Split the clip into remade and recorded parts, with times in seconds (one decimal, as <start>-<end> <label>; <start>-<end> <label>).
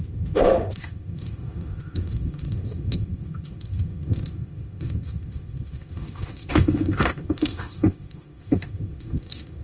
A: 0.0-9.6 remade